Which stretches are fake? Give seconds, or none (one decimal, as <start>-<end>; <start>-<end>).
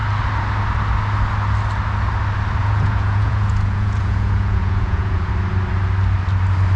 2.6-5.3